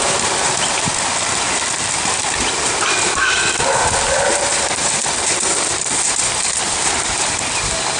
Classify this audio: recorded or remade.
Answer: recorded